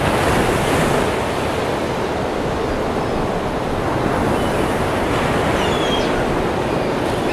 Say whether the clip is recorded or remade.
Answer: recorded